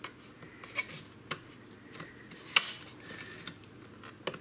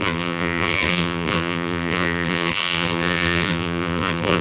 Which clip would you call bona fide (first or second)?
first